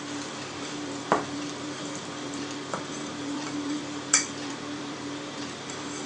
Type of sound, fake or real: fake